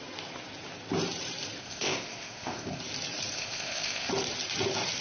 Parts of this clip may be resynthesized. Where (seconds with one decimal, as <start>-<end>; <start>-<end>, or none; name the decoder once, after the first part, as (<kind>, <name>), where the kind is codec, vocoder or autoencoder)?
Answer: 1.6-2.8 (codec, ZipCodec); 3.3-4.1